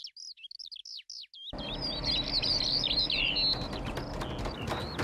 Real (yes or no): yes